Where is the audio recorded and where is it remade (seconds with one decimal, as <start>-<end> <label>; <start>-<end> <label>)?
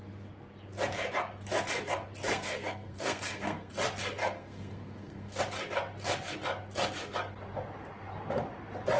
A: 0.0-2.3 recorded; 2.3-3.7 remade; 3.7-4.2 recorded; 4.2-5.4 remade; 5.4-9.0 recorded